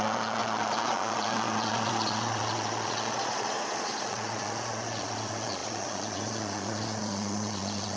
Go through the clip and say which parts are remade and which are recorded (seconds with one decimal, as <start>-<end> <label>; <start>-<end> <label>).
0.0-8.0 remade

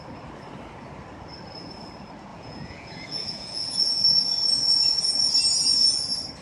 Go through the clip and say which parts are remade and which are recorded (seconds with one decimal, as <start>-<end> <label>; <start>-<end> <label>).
0.0-2.3 recorded; 2.3-5.3 remade; 5.3-6.4 recorded

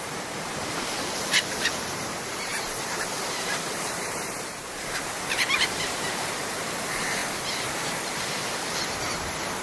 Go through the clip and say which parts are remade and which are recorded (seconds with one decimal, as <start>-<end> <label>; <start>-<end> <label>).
0.0-7.2 remade; 7.2-9.1 recorded; 9.1-9.6 remade